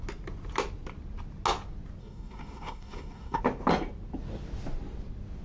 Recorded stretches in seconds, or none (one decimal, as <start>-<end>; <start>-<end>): 0.0-2.0; 3.4-5.4